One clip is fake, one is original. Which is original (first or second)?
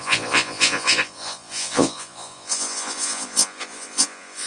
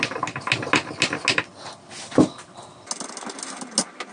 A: second